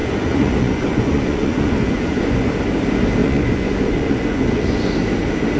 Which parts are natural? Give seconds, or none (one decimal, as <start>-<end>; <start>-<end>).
2.5-3.2; 4.9-5.6